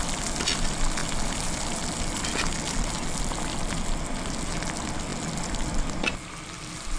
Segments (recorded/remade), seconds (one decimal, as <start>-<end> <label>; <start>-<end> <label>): 0.0-7.0 recorded